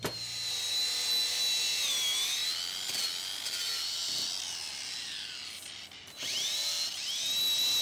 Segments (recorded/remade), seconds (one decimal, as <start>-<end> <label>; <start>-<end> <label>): 0.0-7.8 recorded